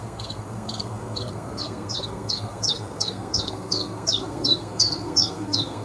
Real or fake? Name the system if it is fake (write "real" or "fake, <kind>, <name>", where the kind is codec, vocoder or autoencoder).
fake, codec, SNAC